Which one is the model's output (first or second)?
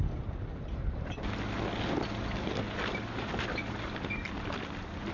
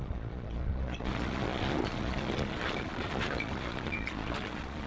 second